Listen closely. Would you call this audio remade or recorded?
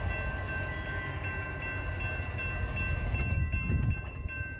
recorded